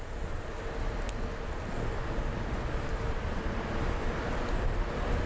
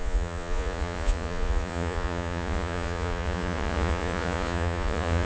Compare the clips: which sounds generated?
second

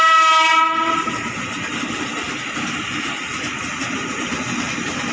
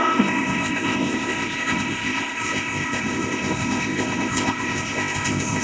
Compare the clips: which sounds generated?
second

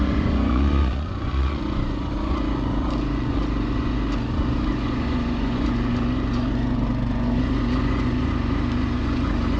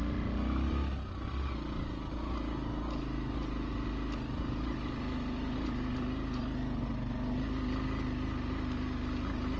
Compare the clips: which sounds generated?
first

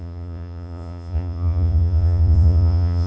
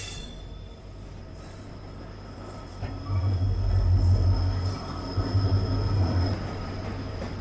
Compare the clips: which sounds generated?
first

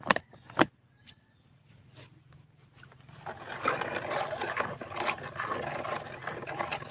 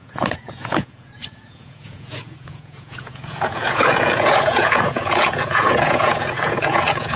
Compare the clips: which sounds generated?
second